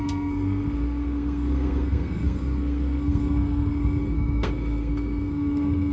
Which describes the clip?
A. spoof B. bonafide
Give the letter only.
A